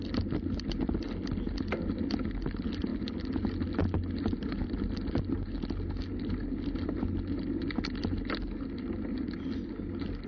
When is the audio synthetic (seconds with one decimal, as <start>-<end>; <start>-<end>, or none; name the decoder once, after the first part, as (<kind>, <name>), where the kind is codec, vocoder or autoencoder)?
none